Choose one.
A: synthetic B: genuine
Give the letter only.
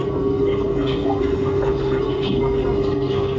A